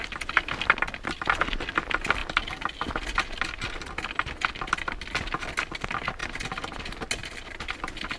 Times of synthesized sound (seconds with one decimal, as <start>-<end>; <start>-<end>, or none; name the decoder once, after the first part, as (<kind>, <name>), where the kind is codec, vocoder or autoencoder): 6.2-6.8 (vocoder, BigVGAN v2); 7.2-8.2